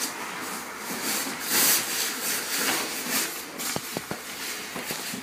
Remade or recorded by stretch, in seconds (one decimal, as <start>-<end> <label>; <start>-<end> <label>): 0.0-0.8 recorded; 0.8-1.7 remade; 1.7-5.2 recorded